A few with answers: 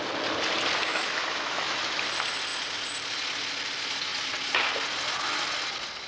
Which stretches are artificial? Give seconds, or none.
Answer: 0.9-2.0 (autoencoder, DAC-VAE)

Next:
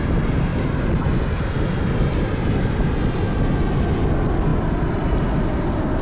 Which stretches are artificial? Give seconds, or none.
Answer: none